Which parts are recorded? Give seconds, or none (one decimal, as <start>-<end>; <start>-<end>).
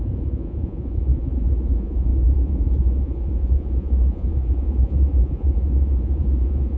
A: none